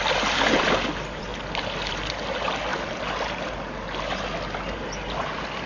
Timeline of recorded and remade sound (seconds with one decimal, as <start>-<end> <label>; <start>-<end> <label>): 0.0-5.7 recorded